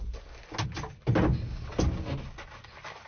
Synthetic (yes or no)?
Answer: no